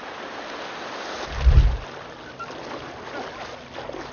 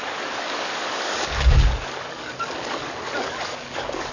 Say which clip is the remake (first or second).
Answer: second